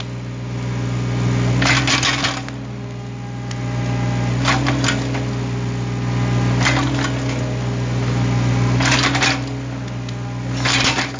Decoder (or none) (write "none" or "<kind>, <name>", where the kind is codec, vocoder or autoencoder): none